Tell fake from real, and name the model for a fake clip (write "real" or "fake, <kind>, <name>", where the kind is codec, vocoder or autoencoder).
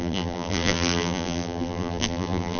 fake, vocoder, BigVGAN v2